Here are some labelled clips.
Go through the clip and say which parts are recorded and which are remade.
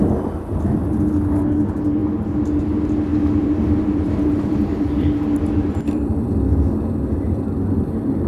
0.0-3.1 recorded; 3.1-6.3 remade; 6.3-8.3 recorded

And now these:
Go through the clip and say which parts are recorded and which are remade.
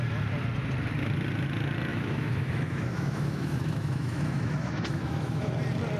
0.0-1.9 recorded; 1.9-5.5 remade; 5.5-6.0 recorded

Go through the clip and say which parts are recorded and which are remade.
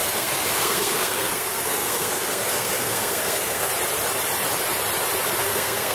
0.0-3.7 remade; 3.7-5.4 recorded; 5.4-5.9 remade